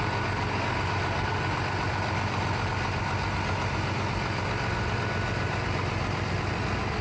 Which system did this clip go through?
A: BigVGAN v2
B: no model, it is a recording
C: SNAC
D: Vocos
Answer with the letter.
B